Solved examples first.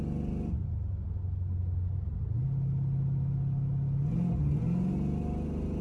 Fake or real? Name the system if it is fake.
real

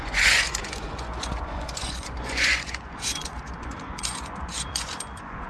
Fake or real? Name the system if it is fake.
fake, vocoder, Vocos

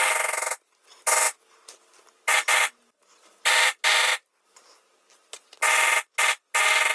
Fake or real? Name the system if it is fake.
real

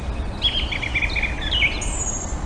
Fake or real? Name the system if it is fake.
real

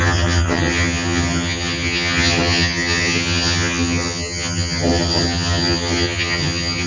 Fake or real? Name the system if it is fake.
fake, vocoder, HiFi-GAN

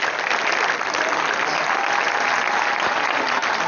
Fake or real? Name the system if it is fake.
real